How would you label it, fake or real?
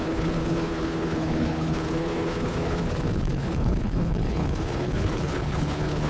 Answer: fake